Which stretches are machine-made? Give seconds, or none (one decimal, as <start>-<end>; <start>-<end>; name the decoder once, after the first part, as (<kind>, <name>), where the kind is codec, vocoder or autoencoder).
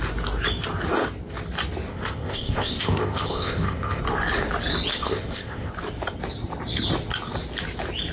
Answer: 1.9-4.0 (codec, ZipCodec); 4.9-5.7